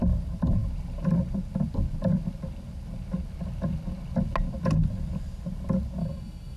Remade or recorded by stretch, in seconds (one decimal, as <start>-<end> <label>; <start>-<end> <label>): 0.0-6.0 recorded; 6.0-6.6 remade